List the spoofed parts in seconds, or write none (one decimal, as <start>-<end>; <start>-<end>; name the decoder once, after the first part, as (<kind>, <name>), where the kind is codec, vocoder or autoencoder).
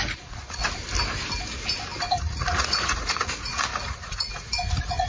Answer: 0.0-0.6 (vocoder, Vocos); 2.0-5.1